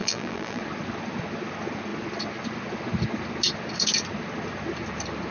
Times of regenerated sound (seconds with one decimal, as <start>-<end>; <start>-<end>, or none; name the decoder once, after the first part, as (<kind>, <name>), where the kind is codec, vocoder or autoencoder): 0.0-0.6 (vocoder, BigVGAN v2)